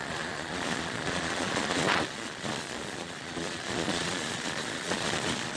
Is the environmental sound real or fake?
fake